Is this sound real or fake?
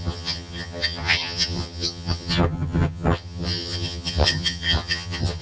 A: fake